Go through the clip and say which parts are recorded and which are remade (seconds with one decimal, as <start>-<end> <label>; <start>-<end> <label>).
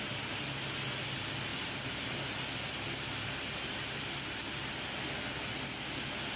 0.0-6.4 recorded